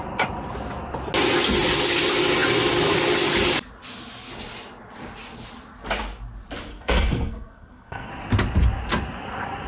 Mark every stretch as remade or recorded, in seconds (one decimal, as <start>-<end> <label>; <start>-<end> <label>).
0.0-6.7 recorded; 6.7-8.1 remade; 8.1-9.7 recorded